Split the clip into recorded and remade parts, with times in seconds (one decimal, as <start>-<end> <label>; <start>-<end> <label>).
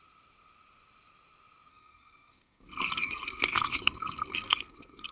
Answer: 0.0-1.7 recorded; 1.7-5.1 remade